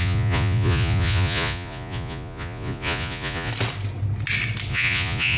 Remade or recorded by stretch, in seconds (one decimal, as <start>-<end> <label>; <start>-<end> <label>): 0.0-3.5 remade; 3.5-4.7 recorded; 4.7-5.4 remade